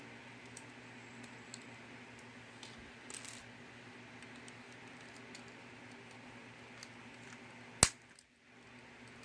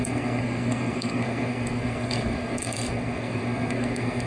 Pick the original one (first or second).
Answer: first